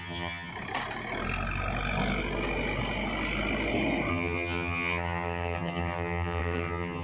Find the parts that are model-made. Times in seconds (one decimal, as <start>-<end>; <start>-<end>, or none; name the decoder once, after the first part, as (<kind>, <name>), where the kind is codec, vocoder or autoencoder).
0.0-0.5 (vocoder, HiFi-GAN); 4.1-7.0